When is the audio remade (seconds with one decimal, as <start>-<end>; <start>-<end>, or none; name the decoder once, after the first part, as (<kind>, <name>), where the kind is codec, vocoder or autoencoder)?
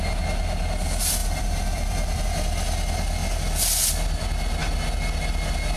1.2-2.2 (vocoder, BigVGAN v2)